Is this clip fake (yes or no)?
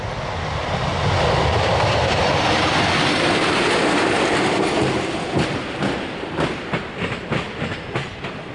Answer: no